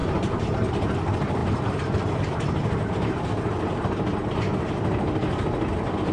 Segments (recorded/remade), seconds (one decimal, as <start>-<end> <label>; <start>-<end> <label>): 0.0-0.7 remade; 0.7-1.4 recorded; 1.4-3.2 remade; 3.2-6.1 recorded